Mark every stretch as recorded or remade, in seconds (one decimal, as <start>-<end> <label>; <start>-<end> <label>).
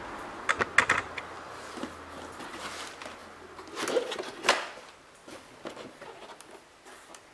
0.0-7.3 recorded